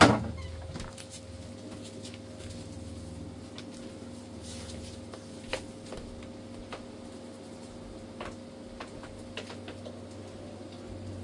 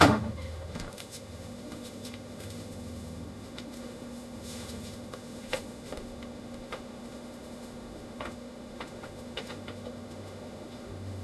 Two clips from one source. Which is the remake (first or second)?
second